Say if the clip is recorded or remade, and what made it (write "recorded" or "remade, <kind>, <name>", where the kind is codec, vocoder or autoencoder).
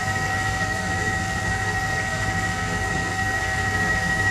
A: remade, codec, SNAC